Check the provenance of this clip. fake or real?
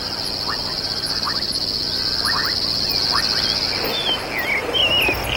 real